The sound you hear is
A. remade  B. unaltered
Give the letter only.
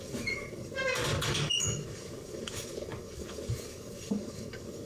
A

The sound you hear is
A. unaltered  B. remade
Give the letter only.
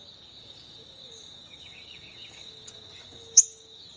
B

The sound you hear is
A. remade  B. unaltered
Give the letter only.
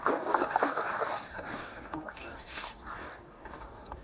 A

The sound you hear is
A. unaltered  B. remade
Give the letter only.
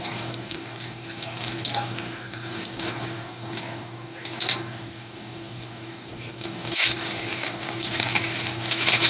B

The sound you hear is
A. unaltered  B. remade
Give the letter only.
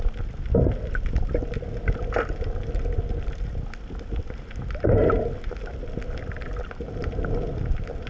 A